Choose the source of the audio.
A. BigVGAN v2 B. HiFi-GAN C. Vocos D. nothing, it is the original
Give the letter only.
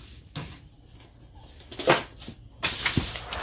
D